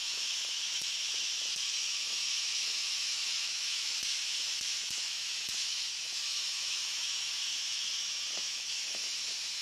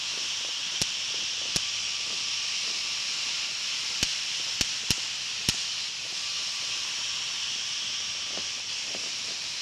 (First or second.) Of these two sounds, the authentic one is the second